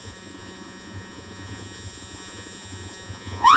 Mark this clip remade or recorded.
remade